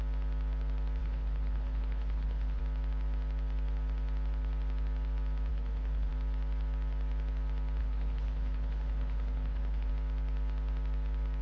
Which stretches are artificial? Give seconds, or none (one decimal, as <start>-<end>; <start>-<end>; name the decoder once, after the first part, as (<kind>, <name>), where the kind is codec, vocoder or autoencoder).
1.0-2.6 (codec, HILCodec); 5.5-6.1; 7.8-9.9